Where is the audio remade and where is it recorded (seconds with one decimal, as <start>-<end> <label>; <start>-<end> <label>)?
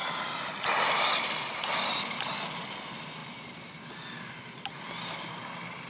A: 0.0-2.0 remade; 2.0-5.9 recorded